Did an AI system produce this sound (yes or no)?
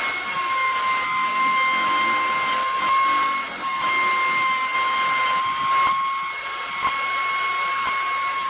no